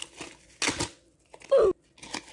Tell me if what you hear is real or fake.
real